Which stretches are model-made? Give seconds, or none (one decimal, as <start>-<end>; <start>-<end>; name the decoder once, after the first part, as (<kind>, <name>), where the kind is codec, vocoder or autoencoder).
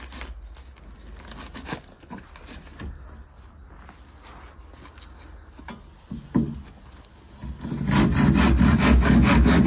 none